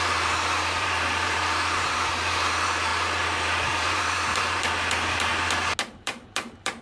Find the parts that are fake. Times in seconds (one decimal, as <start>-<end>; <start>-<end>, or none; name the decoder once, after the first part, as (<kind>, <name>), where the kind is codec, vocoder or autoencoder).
0.0-5.3 (vocoder, BigVGAN v2); 5.9-6.8